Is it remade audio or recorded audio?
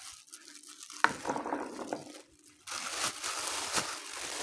recorded